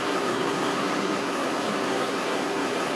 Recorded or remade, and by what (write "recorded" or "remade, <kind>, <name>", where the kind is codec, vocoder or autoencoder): remade, codec, SNAC